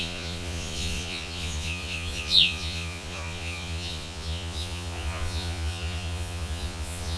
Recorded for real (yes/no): no